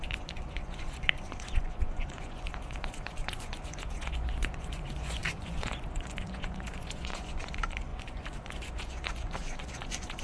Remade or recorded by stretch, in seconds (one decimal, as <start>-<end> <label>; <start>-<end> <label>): 0.0-10.2 remade